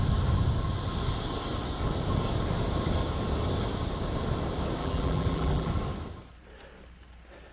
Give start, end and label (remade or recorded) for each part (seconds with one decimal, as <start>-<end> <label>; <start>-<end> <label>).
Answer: 0.0-4.8 recorded; 4.8-5.7 remade; 5.7-7.5 recorded